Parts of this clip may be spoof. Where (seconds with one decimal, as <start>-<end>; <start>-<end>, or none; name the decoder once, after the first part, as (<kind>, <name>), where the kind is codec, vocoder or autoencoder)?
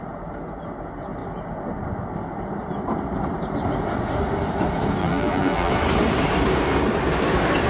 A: 5.0-5.7 (vocoder, BigVGAN v2)